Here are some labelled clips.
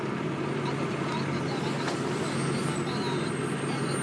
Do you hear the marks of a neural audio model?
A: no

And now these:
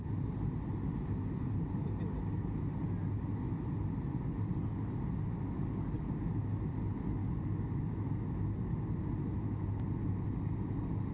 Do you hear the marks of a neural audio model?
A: no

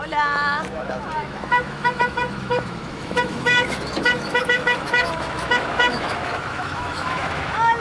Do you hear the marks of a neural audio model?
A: yes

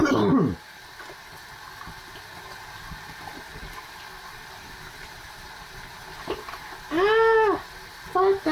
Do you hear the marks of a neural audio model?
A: no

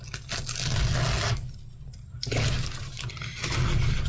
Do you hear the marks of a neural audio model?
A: no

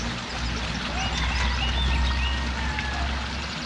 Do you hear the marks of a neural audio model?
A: no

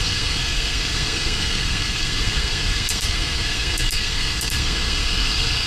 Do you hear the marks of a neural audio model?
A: yes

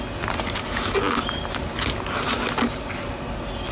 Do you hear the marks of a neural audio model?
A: no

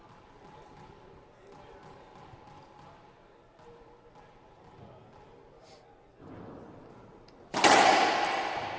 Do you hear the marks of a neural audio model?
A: no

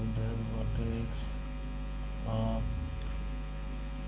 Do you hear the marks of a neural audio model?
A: no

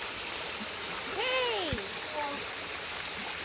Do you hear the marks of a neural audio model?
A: no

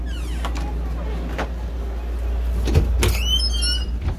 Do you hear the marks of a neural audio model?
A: no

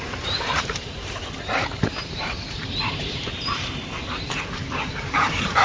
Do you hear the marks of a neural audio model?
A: yes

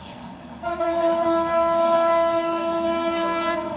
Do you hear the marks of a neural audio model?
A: yes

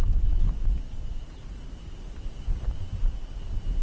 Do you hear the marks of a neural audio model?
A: no